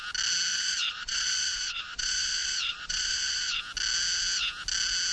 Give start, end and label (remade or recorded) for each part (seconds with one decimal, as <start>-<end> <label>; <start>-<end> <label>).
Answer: 0.0-0.5 recorded; 0.5-3.6 remade; 3.6-5.1 recorded